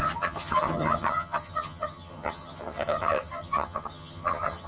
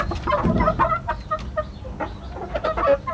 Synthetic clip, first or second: first